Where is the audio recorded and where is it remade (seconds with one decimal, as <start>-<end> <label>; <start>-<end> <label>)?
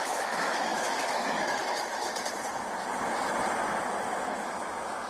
0.0-2.1 remade; 2.1-4.2 recorded; 4.2-5.1 remade